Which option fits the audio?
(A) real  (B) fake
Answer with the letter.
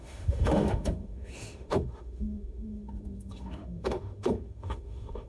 B